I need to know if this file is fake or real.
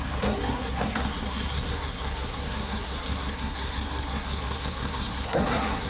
fake